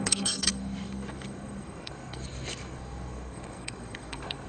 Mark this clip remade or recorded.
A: remade